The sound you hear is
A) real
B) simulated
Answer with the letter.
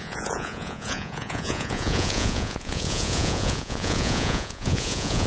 B